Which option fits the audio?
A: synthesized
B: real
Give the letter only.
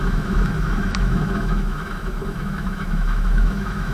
A